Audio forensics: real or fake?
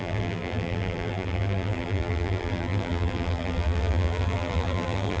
fake